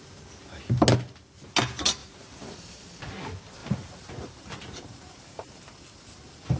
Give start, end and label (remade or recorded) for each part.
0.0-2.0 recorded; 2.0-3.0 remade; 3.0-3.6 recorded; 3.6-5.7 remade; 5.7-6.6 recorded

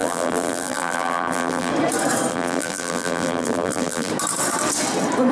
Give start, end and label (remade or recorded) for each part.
0.0-1.7 remade; 1.7-2.3 recorded; 2.3-4.1 remade; 4.1-5.3 recorded

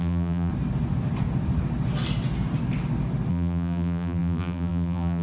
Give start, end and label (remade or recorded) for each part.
0.0-0.5 remade; 0.5-3.3 recorded; 3.3-5.2 remade

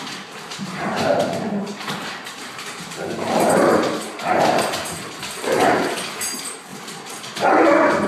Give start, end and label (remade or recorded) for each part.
0.0-0.5 recorded; 0.5-5.1 remade; 5.1-8.1 recorded

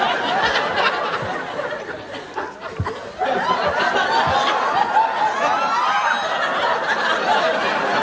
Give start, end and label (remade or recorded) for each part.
0.0-8.0 recorded

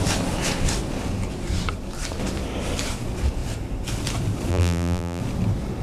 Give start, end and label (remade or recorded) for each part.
0.0-4.5 recorded; 4.5-5.2 remade; 5.2-5.8 recorded